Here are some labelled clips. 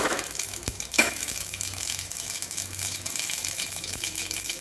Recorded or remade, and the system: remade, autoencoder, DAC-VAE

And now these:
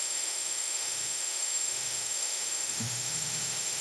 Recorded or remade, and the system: remade, autoencoder, DAC-VAE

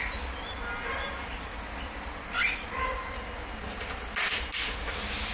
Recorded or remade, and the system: recorded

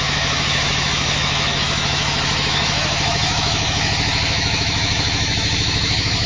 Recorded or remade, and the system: remade, autoencoder, DAC-VAE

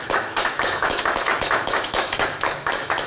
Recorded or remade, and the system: remade, autoencoder, DAC-VAE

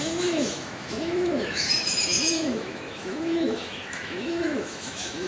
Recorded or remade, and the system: remade, autoencoder, DAC-VAE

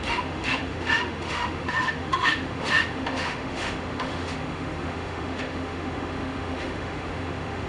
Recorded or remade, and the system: remade, autoencoder, DAC-VAE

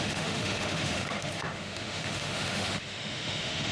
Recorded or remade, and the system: remade, autoencoder, DAC-VAE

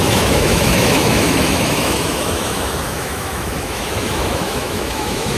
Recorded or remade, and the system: remade, autoencoder, DAC-VAE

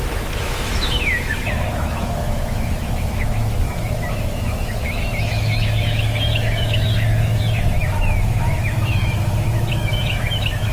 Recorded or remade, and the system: remade, autoencoder, DAC-VAE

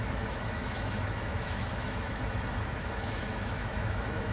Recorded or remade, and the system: remade, autoencoder, DAC-VAE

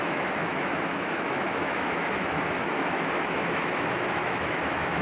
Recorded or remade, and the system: remade, autoencoder, DAC-VAE